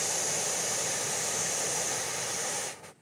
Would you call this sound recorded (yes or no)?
yes